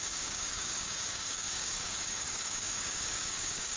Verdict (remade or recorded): remade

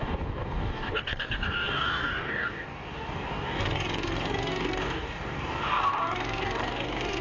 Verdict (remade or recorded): remade